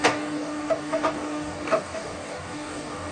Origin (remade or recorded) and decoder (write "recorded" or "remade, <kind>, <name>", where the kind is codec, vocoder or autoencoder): remade, codec, DAC